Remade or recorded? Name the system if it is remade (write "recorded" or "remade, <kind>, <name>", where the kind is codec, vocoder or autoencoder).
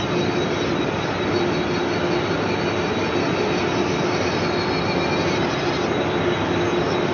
recorded